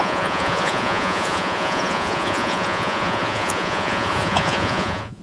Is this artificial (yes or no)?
yes